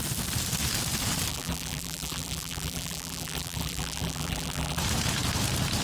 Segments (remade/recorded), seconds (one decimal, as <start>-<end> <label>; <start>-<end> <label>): 0.0-1.3 recorded; 1.3-4.8 remade; 4.8-5.8 recorded